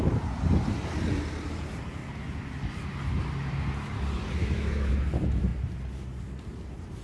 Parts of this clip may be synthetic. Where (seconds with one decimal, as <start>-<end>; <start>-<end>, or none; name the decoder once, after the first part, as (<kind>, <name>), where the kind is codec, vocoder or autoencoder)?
4.4-4.9 (autoencoder, DAC-VAE)